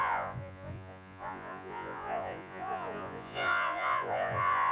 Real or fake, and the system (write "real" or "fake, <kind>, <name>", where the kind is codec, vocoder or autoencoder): fake, vocoder, Vocos